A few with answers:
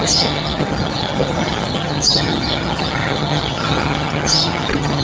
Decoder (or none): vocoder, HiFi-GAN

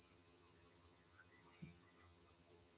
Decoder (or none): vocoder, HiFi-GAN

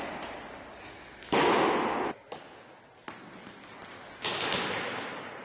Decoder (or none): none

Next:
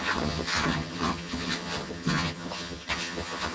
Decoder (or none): vocoder, HiFi-GAN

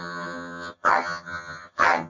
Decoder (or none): vocoder, HiFi-GAN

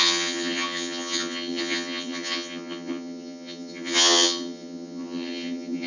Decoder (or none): vocoder, HiFi-GAN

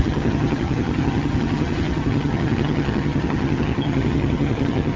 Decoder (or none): vocoder, HiFi-GAN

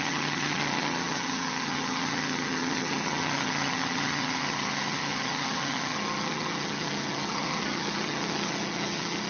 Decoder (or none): vocoder, HiFi-GAN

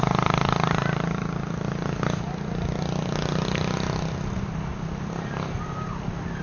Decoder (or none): none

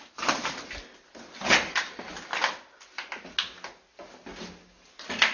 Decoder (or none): none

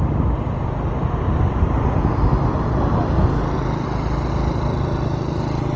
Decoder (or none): none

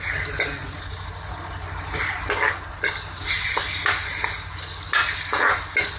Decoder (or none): none